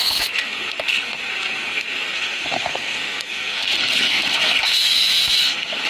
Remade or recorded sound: remade